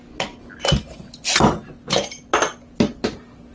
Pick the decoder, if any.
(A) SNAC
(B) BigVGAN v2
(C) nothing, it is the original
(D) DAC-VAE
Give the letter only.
C